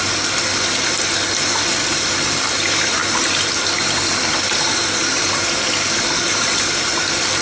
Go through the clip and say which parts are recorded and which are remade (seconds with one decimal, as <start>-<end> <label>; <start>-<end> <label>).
0.0-7.4 recorded